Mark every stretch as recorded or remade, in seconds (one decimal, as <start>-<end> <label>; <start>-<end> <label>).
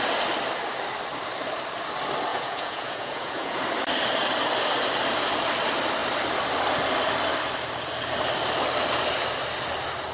0.0-2.3 recorded; 2.3-3.6 remade; 3.6-10.1 recorded